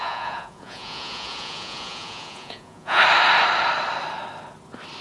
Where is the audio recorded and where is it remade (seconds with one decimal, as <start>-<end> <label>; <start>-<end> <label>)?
0.0-3.0 remade; 3.0-5.0 recorded